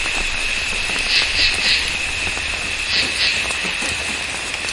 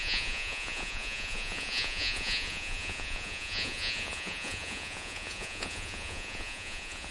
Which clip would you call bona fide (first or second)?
first